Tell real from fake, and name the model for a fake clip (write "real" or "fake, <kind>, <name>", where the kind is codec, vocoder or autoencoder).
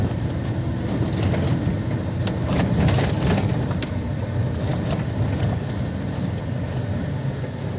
real